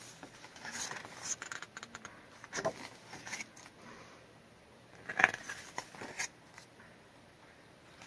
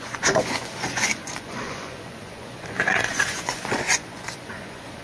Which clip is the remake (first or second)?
second